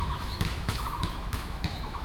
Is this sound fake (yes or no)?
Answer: yes